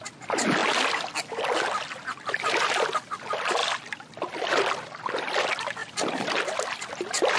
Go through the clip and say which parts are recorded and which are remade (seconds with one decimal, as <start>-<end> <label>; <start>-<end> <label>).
0.0-7.4 recorded

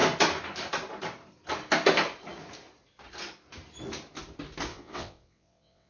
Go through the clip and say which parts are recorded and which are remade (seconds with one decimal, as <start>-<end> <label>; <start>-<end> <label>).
0.0-4.7 recorded; 4.7-5.9 remade

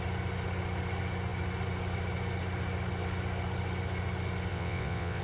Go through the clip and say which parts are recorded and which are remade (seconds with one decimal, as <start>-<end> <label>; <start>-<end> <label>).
0.0-4.5 recorded; 4.5-5.2 remade

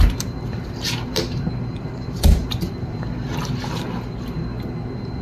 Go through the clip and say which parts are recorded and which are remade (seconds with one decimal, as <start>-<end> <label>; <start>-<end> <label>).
0.0-5.2 recorded

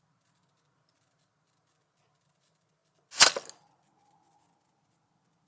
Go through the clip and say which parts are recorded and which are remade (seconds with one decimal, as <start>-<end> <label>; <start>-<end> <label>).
0.0-5.5 recorded

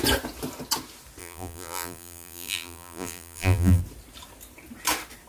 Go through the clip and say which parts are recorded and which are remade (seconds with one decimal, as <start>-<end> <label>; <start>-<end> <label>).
0.0-1.2 recorded; 1.2-3.8 remade; 3.8-5.3 recorded

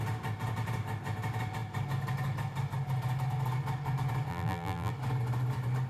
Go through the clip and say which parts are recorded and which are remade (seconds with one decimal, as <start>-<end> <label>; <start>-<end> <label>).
0.0-4.3 recorded; 4.3-4.9 remade; 4.9-5.9 recorded